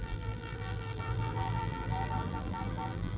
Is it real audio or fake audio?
fake